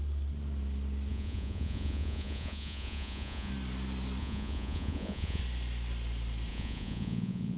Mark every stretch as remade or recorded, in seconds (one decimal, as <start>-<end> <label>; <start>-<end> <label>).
0.0-1.1 recorded; 1.1-3.5 remade; 3.5-4.2 recorded; 4.2-5.4 remade; 5.4-6.5 recorded; 6.5-7.6 remade